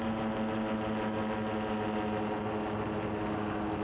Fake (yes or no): no